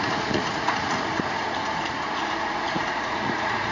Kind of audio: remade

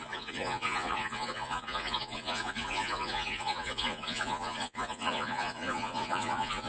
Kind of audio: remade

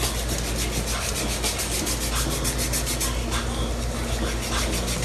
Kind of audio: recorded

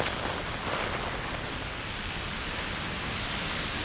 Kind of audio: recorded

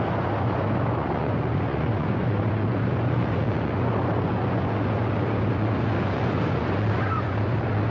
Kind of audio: remade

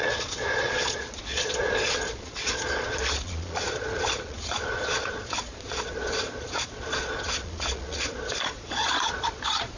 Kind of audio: remade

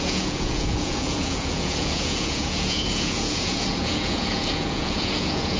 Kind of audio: remade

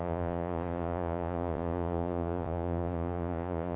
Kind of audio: remade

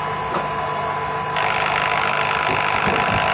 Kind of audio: recorded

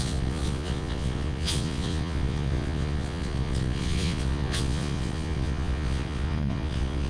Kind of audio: remade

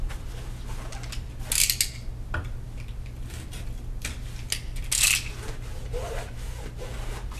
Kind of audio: recorded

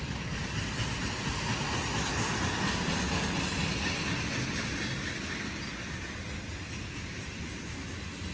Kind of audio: recorded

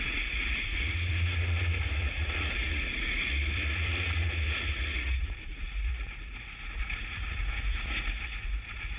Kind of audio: remade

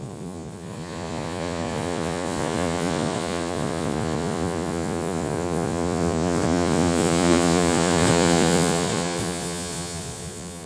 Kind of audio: remade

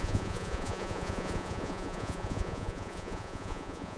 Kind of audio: remade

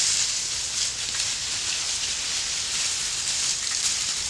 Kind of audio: recorded